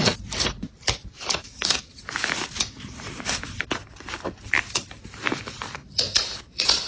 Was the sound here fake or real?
fake